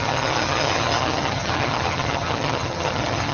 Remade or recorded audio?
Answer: remade